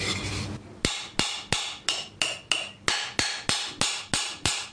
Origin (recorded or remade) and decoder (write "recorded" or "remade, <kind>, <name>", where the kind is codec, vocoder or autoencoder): recorded